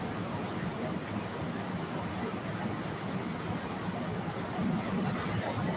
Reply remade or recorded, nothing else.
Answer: recorded